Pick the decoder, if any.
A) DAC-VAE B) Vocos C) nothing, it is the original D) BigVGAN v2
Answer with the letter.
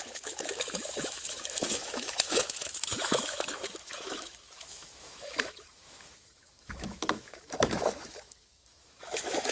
A